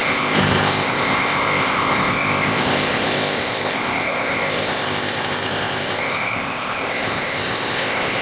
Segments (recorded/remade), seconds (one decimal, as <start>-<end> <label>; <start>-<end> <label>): 0.0-8.2 remade